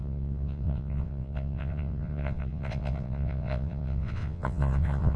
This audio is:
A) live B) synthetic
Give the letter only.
B